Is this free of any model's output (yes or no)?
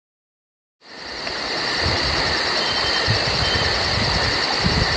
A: yes